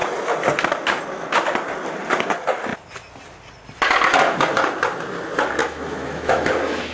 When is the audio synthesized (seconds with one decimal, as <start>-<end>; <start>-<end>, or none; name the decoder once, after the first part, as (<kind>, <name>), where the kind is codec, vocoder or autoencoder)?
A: 5.6-6.5 (autoencoder, DAC-VAE)